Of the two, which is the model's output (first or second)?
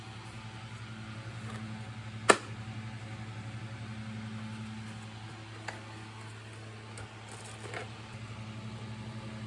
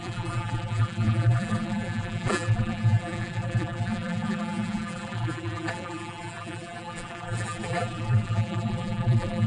second